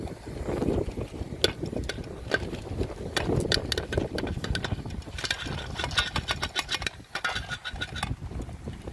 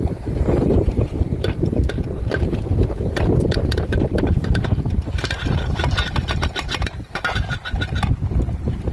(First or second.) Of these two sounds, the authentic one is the first